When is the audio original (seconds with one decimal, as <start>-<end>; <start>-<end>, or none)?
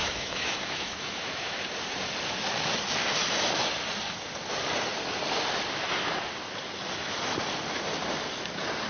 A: 1.6-8.9